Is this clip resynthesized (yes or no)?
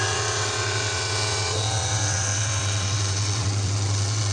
yes